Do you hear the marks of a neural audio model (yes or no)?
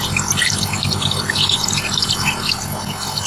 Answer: no